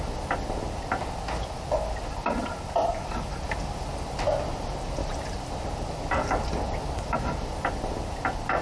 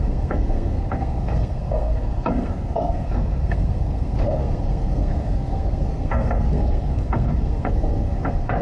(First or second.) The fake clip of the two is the second